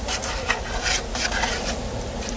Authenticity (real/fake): real